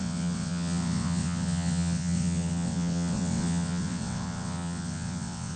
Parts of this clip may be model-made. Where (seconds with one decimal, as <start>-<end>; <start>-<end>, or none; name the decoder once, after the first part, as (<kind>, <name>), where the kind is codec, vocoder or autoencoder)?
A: 0.0-5.6 (vocoder, WaveNeXt)